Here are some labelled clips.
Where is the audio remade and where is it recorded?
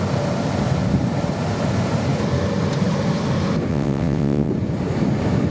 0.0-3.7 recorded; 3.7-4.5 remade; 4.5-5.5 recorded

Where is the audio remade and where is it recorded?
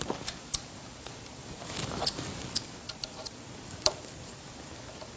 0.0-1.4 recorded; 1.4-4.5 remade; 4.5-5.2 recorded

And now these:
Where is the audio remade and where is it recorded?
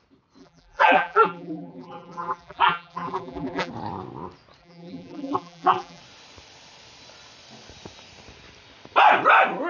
0.0-0.4 recorded; 0.4-3.7 remade; 3.7-4.6 recorded; 4.6-6.0 remade; 6.0-9.7 recorded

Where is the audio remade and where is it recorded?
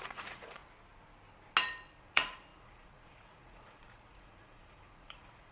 0.0-0.6 remade; 0.6-2.0 recorded; 2.0-5.5 remade